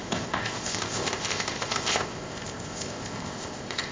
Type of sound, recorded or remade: remade